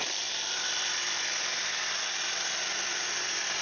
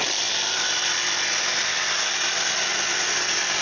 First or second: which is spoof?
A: first